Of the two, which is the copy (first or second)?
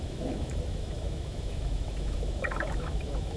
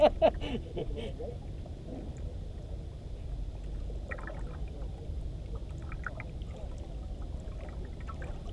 first